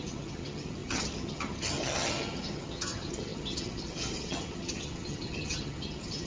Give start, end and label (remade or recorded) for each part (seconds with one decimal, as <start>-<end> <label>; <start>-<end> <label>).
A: 0.0-6.3 remade